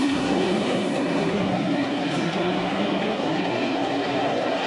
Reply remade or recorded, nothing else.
remade